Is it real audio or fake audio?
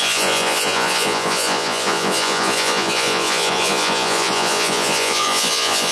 fake